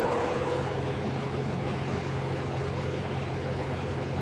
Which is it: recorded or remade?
remade